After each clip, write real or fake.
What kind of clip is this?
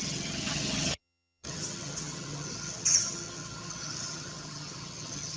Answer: fake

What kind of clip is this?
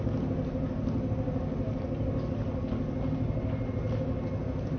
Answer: real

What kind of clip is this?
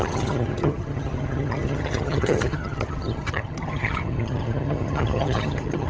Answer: fake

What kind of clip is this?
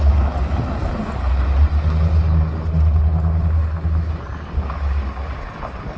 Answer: real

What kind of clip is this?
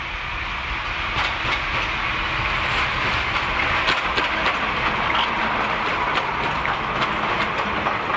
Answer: real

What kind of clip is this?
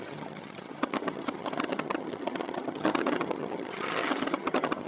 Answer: fake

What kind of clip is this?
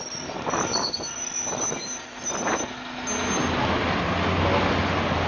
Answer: real